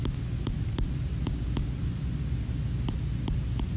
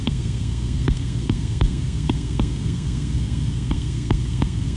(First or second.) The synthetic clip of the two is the second